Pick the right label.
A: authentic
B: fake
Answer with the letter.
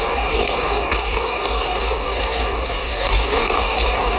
B